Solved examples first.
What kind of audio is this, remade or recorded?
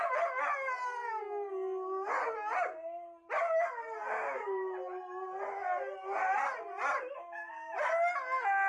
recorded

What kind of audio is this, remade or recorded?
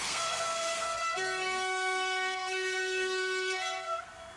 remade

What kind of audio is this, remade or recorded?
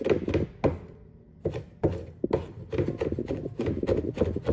recorded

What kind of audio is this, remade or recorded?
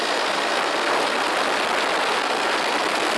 recorded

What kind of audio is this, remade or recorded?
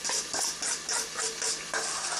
recorded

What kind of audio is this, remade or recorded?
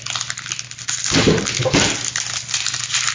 recorded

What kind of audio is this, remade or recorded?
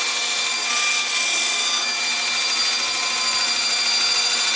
recorded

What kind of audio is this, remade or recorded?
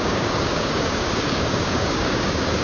remade